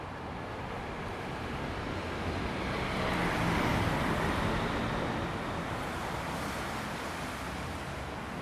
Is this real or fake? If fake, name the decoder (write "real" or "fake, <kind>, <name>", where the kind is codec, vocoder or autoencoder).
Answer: real